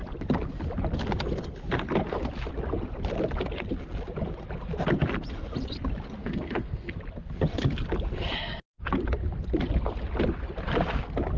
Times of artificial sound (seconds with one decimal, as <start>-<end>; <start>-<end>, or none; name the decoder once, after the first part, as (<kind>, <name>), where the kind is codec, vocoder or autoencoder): 6.2-6.9 (codec, SNAC)